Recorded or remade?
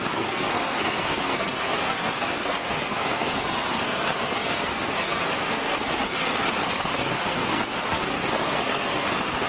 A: remade